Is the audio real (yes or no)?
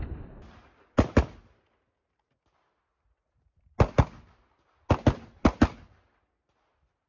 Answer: yes